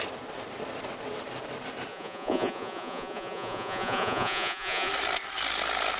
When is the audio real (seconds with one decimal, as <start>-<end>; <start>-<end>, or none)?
0.0-1.9; 4.9-6.0